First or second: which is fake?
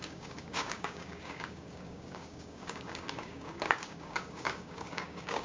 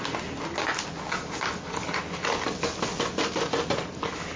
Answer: first